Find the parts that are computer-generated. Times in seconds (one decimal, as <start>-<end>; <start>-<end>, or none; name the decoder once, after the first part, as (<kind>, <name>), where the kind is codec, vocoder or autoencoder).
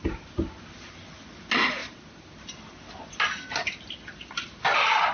none